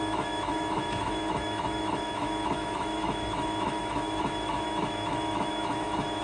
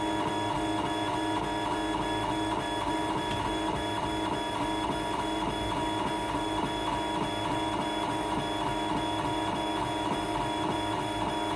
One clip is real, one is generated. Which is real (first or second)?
second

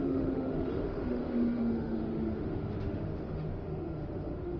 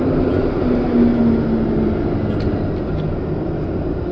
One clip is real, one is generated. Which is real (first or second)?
second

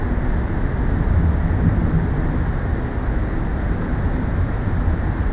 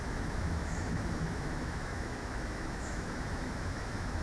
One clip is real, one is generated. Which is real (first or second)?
first